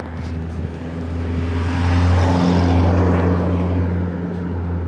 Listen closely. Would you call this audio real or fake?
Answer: real